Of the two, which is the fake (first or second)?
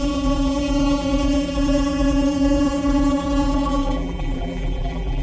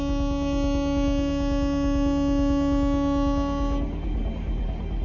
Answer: first